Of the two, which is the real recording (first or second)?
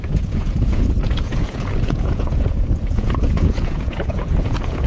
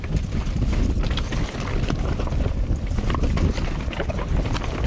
second